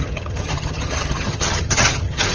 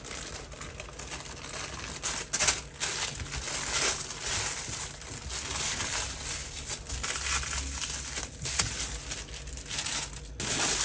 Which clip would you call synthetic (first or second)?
first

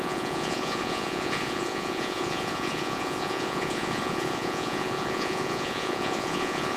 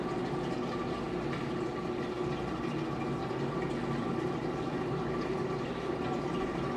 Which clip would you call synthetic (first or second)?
first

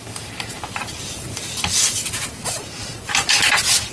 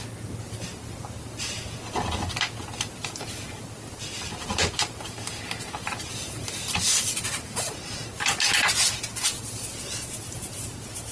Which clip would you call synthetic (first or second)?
first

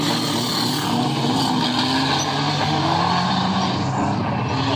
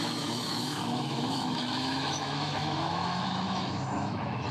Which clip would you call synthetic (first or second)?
second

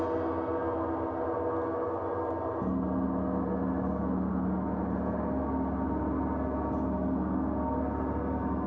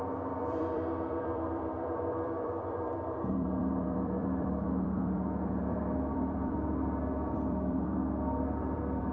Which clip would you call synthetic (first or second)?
second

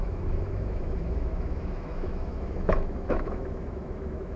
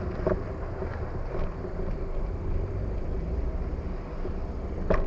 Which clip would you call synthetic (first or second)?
first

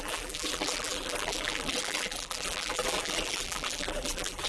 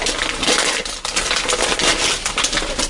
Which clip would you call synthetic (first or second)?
first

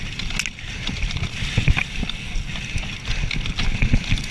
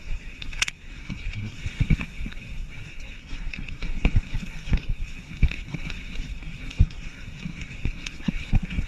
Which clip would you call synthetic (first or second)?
second